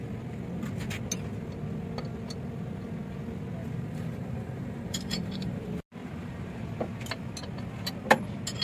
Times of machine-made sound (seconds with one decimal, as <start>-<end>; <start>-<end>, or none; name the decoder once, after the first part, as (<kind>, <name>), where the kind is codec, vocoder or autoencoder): 3.6-5.6 (vocoder, BigVGAN v2); 6.0-6.6